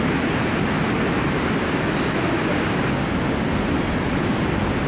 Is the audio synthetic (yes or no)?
no